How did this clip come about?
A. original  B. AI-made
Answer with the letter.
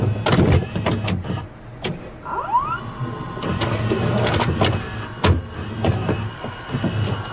A